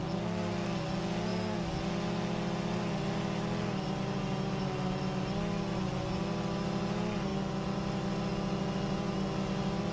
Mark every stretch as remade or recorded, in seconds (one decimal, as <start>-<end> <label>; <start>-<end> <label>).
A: 0.0-9.9 recorded